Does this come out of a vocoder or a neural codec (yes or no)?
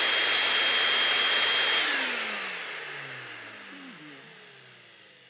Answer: no